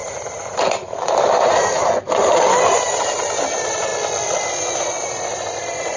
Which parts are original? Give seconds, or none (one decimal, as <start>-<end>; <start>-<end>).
3.9-4.6